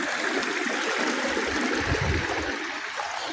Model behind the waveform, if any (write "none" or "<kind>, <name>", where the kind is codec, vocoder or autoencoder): none